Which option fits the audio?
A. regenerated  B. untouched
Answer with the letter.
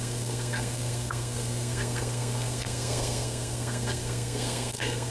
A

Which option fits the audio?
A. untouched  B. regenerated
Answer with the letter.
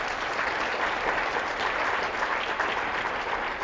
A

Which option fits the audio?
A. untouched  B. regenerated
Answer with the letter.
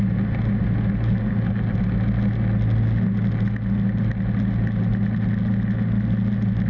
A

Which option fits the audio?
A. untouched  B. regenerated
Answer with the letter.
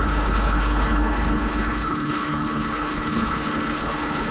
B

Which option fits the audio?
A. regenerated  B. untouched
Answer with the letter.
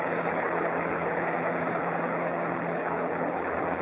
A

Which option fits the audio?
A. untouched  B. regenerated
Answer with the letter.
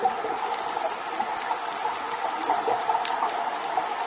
A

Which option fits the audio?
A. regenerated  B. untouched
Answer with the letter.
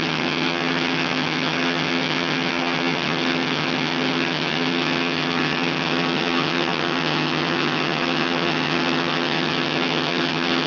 A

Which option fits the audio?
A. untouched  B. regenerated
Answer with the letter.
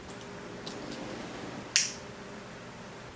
A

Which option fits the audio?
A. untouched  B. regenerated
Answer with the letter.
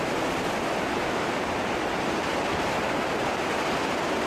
A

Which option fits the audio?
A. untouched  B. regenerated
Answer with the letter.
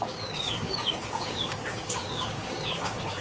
B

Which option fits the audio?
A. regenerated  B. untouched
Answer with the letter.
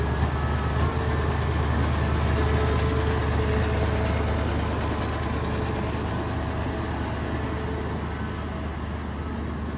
B